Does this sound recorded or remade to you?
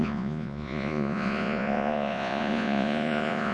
remade